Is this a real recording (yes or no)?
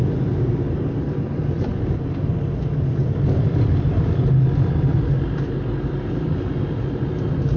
yes